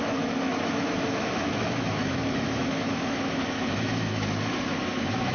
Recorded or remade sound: remade